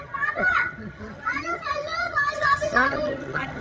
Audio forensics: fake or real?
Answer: fake